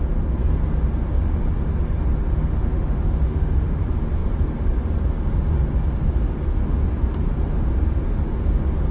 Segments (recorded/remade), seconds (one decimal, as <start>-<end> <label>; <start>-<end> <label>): 0.0-2.5 recorded; 2.5-3.8 remade; 3.8-8.9 recorded